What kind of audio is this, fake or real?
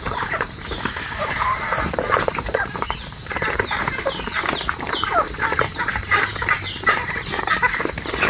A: fake